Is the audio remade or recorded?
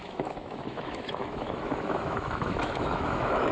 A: remade